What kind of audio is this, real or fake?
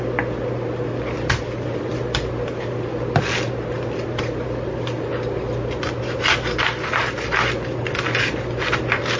real